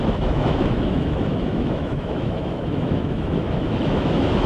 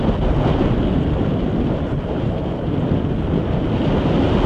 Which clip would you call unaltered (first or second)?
second